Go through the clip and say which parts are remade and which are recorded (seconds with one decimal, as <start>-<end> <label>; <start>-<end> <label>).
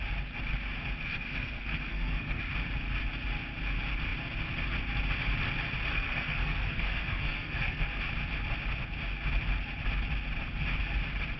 0.0-1.1 recorded; 1.1-2.4 remade; 2.4-5.9 recorded; 5.9-8.0 remade; 8.0-11.4 recorded